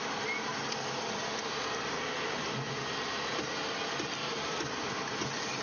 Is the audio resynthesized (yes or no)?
no